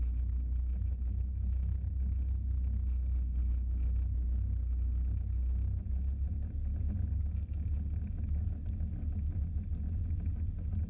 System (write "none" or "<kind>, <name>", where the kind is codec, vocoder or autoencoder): none